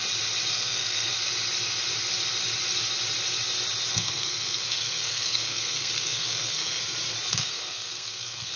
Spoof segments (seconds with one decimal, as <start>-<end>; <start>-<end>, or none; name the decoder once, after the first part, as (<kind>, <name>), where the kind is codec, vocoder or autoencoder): 0.5-1.1 (codec, SNAC); 3.9-6.8; 7.3-8.6